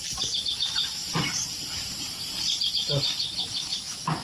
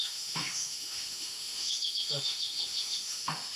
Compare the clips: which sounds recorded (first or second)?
first